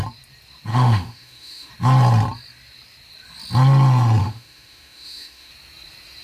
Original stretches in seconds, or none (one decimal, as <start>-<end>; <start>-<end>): 0.0-0.7; 1.7-4.2; 5.5-6.2